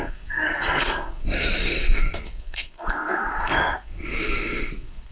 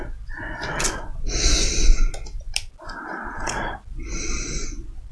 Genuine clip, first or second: second